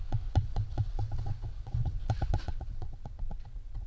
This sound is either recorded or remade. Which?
remade